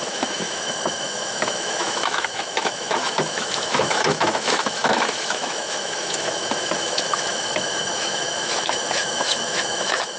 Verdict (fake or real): fake